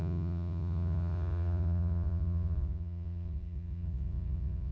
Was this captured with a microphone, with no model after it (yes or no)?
no